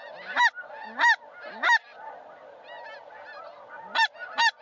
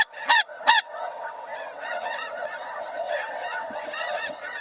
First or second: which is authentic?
first